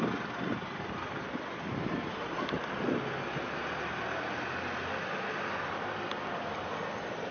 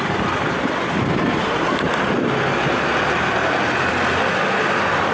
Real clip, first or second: first